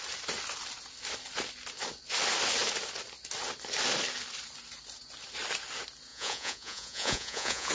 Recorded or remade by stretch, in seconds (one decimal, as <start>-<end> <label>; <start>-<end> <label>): 0.0-6.1 recorded; 6.1-7.7 remade